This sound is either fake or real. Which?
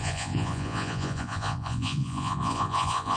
fake